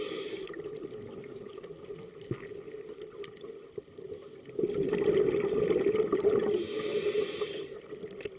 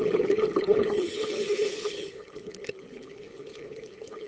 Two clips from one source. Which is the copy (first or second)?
second